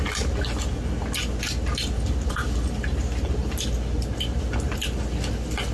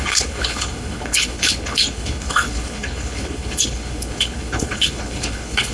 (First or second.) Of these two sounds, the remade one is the second